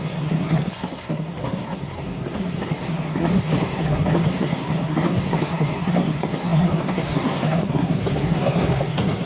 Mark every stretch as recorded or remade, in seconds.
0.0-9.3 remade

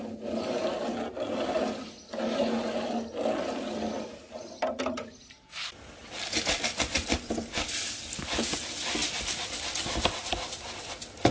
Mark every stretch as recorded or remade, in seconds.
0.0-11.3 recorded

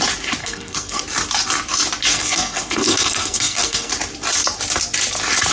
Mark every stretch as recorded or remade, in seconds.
0.0-0.4 recorded; 0.4-1.0 remade; 1.0-2.1 recorded; 2.1-3.9 remade; 3.9-5.5 recorded

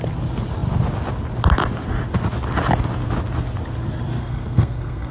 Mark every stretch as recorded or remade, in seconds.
0.0-4.2 recorded; 4.2-5.1 remade